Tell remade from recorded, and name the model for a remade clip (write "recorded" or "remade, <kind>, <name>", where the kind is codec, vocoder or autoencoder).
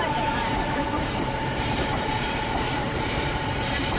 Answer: remade, vocoder, BigVGAN v2